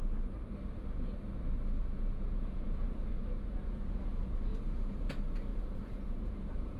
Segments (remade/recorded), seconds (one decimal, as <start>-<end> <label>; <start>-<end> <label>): 0.0-1.8 recorded; 1.8-4.1 remade; 4.1-4.5 recorded; 4.5-5.1 remade; 5.1-5.5 recorded; 5.5-6.8 remade